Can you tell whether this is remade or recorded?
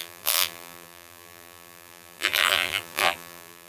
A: remade